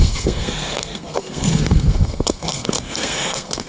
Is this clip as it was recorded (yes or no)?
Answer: no